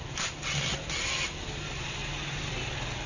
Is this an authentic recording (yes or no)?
yes